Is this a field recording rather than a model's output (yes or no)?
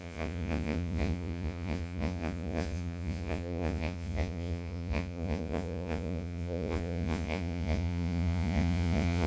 no